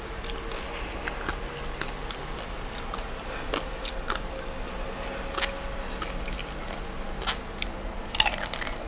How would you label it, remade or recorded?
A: recorded